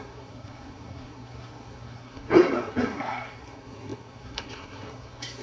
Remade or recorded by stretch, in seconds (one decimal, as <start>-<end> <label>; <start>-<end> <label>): 0.0-5.4 remade